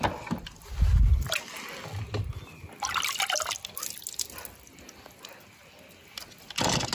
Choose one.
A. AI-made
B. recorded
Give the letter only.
B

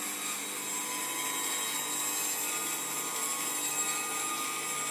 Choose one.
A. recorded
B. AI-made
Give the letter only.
A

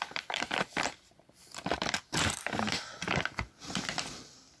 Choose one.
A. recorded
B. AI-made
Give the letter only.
B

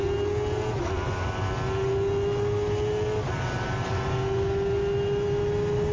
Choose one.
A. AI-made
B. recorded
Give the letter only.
B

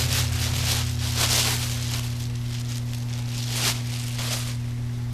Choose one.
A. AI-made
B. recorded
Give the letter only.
B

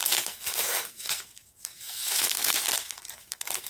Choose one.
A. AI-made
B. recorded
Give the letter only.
A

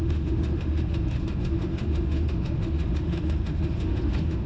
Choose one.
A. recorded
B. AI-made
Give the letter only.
B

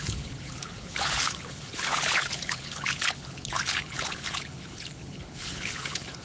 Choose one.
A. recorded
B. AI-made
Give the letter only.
B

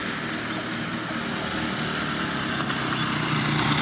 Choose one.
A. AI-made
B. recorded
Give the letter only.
B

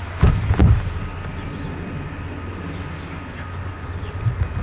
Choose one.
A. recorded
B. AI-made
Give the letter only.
A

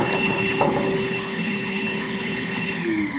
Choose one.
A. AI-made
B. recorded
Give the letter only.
A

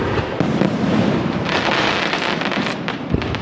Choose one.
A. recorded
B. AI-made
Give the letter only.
B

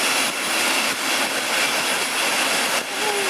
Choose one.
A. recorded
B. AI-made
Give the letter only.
A